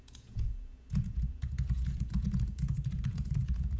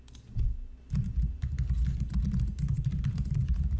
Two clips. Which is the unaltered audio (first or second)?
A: second